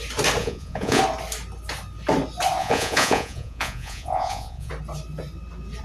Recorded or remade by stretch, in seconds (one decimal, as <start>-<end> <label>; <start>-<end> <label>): 0.0-0.4 recorded; 0.4-1.0 remade; 1.0-2.6 recorded; 2.6-4.7 remade; 4.7-5.8 recorded